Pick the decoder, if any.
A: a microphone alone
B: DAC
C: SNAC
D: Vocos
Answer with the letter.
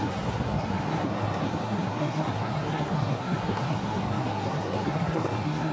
C